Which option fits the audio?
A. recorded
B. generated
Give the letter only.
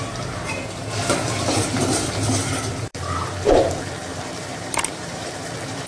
B